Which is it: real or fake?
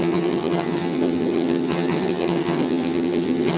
fake